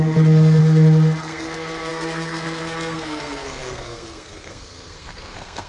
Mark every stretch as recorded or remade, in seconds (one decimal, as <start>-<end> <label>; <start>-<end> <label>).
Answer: 0.0-0.6 remade; 0.6-1.2 recorded; 1.2-5.7 remade